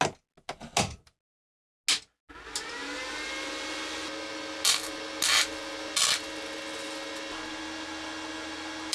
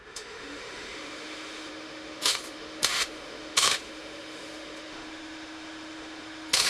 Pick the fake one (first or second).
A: second